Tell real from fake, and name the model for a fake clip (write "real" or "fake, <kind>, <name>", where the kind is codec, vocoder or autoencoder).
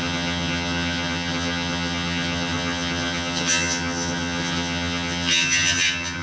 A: fake, vocoder, HiFi-GAN